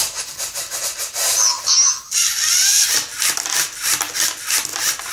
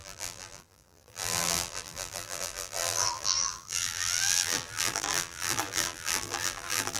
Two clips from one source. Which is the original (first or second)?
first